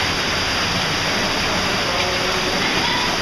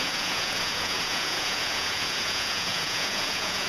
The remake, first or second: second